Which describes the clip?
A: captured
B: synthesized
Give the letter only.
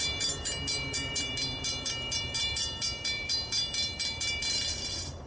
B